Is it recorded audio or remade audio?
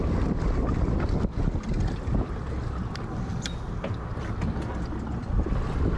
recorded